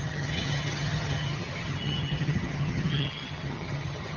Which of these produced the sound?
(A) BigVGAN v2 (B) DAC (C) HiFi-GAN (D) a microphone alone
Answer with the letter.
C